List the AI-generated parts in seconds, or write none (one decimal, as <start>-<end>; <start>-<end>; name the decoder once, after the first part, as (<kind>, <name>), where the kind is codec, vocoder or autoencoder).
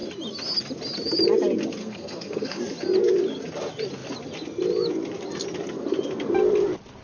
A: 1.8-2.6 (codec, SNAC)